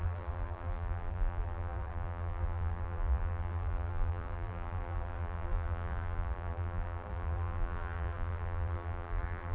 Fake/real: fake